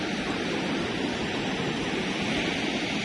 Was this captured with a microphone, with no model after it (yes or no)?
yes